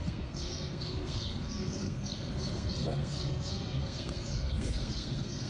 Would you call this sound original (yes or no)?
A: no